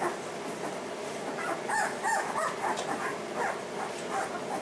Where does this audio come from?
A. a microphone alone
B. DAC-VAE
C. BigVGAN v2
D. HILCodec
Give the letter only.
A